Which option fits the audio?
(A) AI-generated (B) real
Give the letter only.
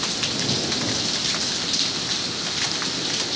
B